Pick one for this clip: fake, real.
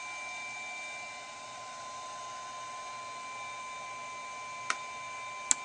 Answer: real